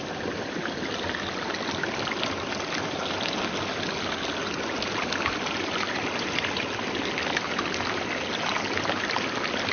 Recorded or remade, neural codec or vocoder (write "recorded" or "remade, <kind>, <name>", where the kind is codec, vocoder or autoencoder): recorded